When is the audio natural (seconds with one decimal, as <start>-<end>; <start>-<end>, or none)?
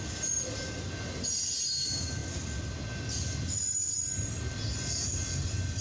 0.0-5.8